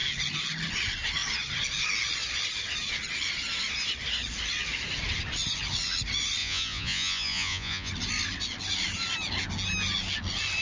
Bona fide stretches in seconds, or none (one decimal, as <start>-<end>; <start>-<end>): 0.0-6.4; 7.9-10.6